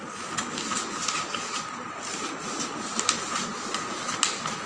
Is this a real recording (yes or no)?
yes